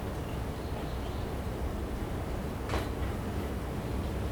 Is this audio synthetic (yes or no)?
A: no